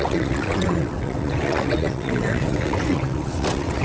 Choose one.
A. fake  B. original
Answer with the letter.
A